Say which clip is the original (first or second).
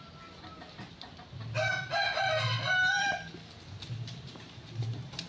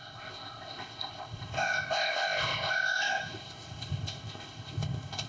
first